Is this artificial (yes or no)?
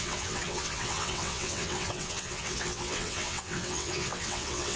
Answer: yes